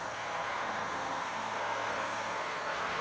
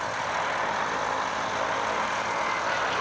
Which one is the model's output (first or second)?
first